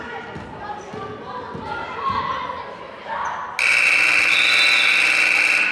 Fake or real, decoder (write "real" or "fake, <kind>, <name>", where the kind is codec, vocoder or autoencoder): real